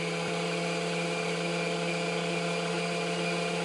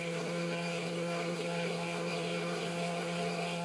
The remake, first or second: second